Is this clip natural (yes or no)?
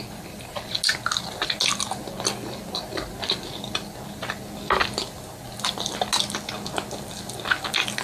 yes